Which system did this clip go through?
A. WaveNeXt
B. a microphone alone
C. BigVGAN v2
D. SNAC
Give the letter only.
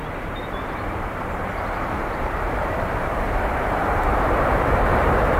C